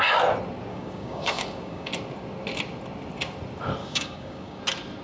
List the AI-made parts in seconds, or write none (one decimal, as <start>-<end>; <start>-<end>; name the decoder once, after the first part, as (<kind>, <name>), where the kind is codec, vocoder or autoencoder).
0.7-1.9 (codec, DAC); 3.8-4.6